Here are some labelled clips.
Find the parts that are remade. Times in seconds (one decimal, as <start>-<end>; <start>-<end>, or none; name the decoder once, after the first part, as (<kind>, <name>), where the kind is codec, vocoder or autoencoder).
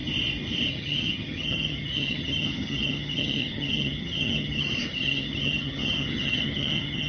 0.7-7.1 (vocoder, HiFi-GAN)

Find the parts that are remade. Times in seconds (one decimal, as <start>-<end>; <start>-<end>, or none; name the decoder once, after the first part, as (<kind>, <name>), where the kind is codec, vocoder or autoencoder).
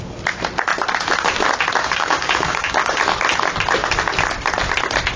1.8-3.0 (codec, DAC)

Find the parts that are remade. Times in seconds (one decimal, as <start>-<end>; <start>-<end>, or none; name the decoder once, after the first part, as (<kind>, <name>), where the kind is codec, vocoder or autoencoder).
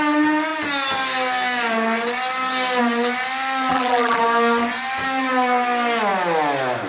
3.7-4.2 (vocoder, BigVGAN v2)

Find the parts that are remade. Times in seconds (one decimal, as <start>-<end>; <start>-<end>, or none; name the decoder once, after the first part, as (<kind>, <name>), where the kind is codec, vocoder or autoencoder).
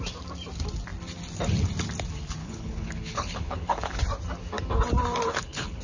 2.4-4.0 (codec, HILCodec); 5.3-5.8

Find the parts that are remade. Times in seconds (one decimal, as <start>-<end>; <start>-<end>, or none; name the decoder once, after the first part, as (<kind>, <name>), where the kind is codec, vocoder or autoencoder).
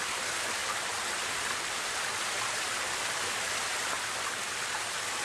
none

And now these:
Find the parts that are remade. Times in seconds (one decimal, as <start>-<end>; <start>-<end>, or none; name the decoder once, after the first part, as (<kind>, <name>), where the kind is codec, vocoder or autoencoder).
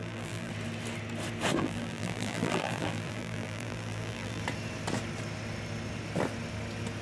0.0-0.5 (vocoder, BigVGAN v2); 1.6-4.4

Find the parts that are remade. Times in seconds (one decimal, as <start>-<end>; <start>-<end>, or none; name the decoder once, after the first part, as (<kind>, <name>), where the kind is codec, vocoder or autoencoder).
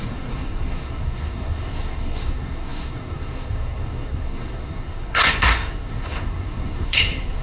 0.0-7.4 (codec, SNAC)